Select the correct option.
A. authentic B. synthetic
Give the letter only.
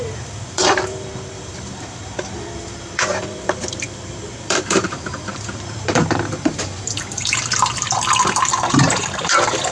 B